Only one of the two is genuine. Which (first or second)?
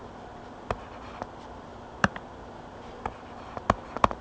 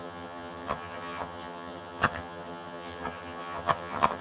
first